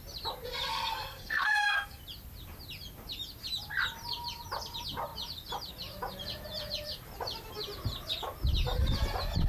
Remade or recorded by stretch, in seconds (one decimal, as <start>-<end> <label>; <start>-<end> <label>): 0.0-0.7 recorded; 0.7-2.0 remade; 2.0-9.5 recorded